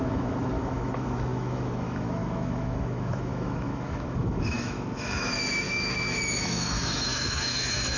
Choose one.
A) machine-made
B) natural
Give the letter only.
A